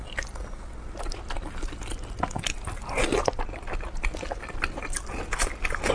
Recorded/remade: recorded